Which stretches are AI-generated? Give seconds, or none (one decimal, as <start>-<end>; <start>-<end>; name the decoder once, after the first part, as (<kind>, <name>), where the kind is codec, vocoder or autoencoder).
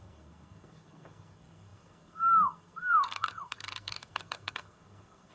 0.0-5.3 (codec, SNAC)